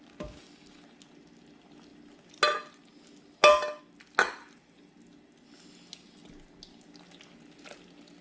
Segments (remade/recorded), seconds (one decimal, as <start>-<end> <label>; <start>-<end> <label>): 0.0-8.2 recorded